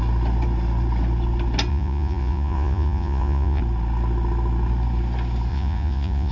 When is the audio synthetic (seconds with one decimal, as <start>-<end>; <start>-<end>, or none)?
1.7-3.6; 5.5-6.3